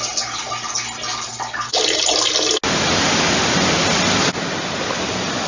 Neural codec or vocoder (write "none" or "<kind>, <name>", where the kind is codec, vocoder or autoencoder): none